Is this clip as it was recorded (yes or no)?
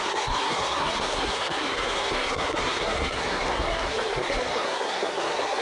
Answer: no